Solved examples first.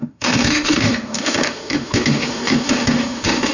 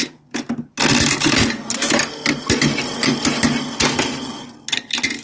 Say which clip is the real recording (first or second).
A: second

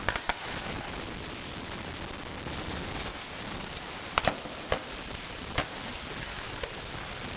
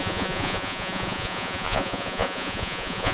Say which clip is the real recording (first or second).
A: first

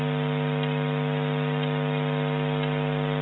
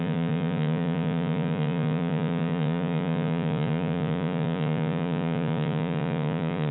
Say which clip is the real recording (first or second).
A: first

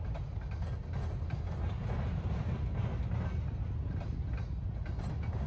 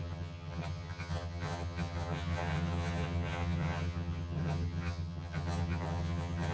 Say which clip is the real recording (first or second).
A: first